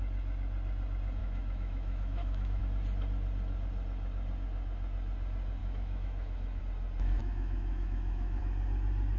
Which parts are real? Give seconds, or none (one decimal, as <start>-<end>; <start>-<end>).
0.0-1.2; 2.6-5.6; 6.6-7.2; 8.4-9.2